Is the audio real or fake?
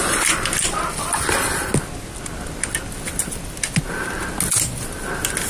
real